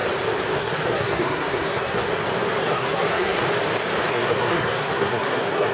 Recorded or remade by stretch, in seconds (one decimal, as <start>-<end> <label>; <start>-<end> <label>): 0.0-0.6 recorded; 0.6-2.1 remade; 2.1-2.6 recorded; 2.6-3.4 remade; 3.4-4.1 recorded; 4.1-5.7 remade